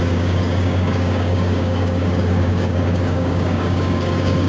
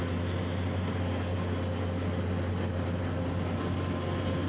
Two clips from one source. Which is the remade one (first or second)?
first